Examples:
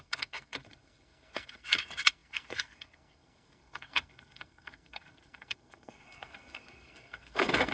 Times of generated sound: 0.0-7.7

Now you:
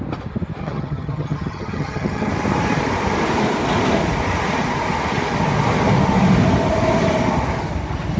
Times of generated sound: 0.6-2.3

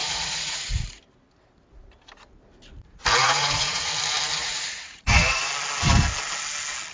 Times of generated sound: 0.0-1.0; 3.2-3.9; 4.4-5.5

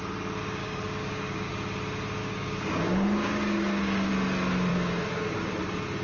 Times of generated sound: 0.6-1.5; 2.2-4.1; 4.7-5.4

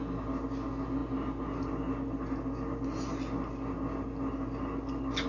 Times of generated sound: none

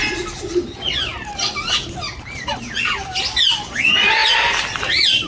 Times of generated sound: 4.2-4.8